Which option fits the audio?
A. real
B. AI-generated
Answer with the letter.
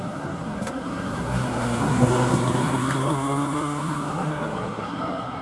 B